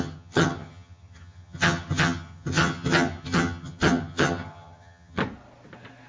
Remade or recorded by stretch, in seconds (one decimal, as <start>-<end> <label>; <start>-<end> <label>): 0.0-5.2 remade; 5.2-6.1 recorded